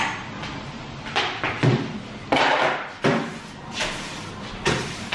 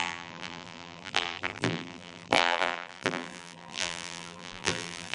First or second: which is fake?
second